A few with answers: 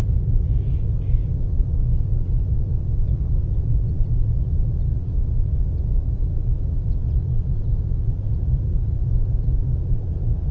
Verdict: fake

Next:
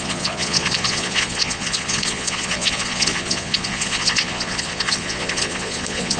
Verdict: fake